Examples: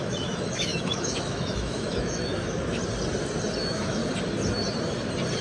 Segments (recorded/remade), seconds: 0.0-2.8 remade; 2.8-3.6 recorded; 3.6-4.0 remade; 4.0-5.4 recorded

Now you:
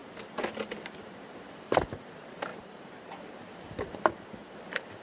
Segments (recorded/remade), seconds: 0.0-1.0 recorded; 1.0-5.0 remade

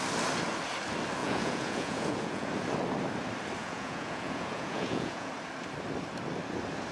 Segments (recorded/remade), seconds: 0.0-1.2 recorded; 1.2-2.5 remade; 2.5-3.6 recorded; 3.6-5.3 remade; 5.3-6.9 recorded

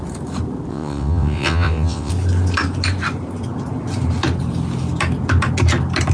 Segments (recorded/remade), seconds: 0.0-0.7 recorded; 0.7-2.1 remade; 2.1-6.1 recorded